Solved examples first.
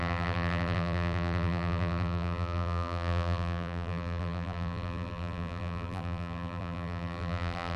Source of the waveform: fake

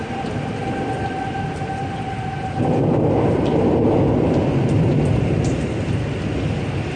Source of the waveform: real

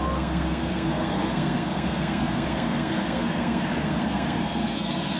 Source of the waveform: fake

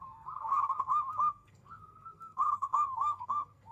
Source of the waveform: fake